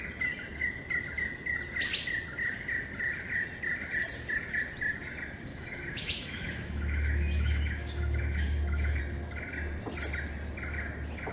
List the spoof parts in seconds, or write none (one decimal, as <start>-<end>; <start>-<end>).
5.5-9.0